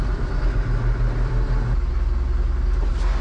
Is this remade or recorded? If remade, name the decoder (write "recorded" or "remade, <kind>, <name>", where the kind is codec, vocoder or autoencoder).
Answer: recorded